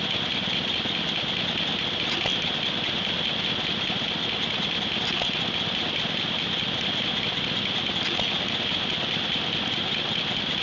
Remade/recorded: recorded